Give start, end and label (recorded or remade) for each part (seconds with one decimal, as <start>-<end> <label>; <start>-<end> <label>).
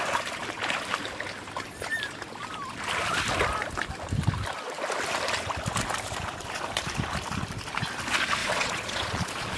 0.0-8.4 recorded; 8.4-9.6 remade